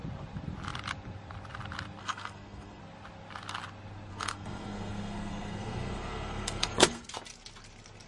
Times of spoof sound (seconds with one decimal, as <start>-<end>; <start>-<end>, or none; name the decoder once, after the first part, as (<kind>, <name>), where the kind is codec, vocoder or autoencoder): 2.0-2.8 (codec, SNAC); 4.1-7.0